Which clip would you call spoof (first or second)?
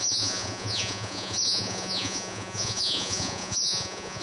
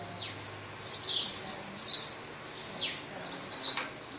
first